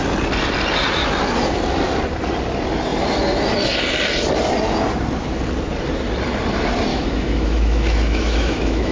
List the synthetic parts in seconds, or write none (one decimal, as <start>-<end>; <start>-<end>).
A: 6.9-8.9